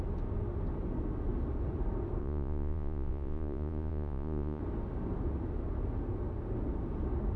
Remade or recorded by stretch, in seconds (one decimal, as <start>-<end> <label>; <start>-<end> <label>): 0.0-2.2 recorded; 2.2-4.6 remade; 4.6-7.4 recorded